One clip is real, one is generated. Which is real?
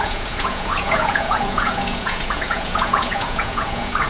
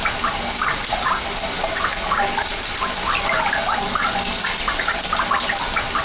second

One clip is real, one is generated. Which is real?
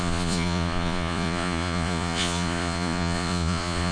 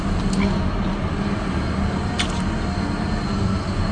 second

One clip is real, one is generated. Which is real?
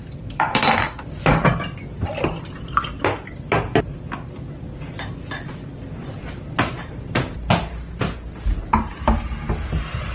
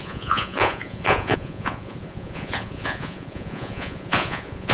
first